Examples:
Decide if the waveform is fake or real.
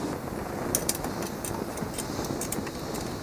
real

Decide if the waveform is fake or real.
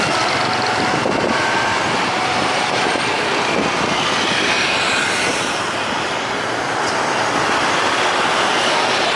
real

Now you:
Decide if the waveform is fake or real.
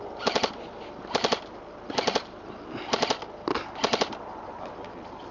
real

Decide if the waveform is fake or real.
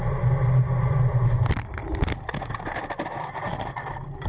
real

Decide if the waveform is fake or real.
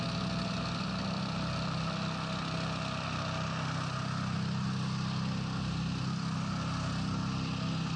real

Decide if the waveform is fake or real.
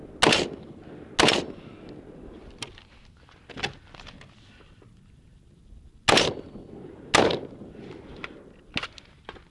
real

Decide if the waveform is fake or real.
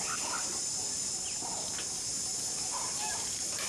fake